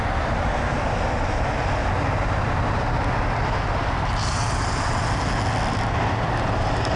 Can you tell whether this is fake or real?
real